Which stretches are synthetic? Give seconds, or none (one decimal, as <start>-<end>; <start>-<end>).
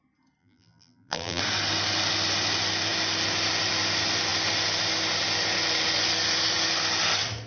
0.4-1.4